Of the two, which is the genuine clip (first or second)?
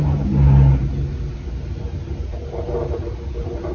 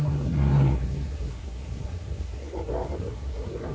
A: first